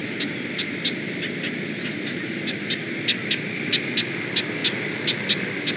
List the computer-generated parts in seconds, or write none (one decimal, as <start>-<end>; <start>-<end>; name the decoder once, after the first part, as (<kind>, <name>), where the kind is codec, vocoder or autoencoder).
none